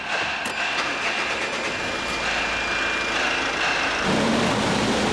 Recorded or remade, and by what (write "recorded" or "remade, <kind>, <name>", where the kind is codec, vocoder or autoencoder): recorded